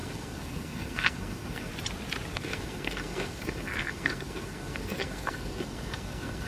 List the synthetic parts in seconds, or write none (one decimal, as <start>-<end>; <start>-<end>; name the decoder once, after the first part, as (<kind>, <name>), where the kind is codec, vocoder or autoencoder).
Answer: 0.0-1.7 (codec, SNAC); 2.3-6.5